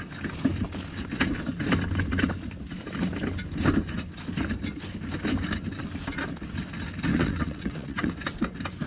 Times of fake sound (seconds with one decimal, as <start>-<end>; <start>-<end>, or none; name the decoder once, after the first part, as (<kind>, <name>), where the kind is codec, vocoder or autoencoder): 7.1-8.1 (vocoder, WaveNeXt)